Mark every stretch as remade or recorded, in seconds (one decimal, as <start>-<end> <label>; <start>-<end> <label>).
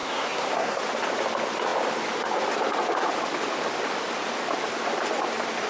0.0-0.8 remade; 0.8-5.7 recorded